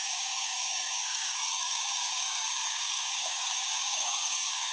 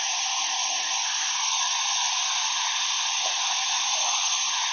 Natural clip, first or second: second